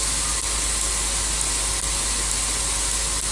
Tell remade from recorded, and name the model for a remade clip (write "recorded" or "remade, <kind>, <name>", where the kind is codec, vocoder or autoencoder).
recorded